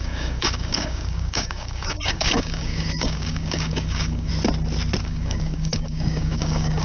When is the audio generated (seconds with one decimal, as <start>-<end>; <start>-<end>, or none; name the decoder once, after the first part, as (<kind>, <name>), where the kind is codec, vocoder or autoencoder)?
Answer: 0.0-4.3 (codec, DAC); 5.0-6.8